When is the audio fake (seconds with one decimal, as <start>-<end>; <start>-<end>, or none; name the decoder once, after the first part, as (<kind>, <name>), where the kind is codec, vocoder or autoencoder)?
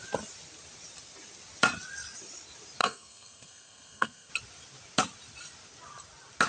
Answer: 2.8-4.3 (codec, SNAC)